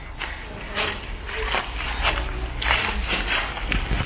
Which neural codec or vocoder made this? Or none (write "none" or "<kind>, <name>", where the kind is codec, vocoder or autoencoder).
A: none